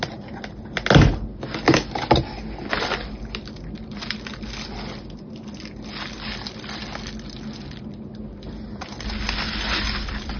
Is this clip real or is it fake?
real